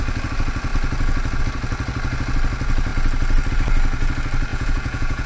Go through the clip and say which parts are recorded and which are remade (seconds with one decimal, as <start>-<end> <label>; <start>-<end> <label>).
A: 0.0-4.5 recorded; 4.5-5.3 remade